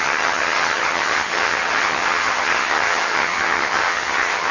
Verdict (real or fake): fake